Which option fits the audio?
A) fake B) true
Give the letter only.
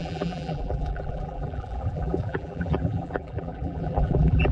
A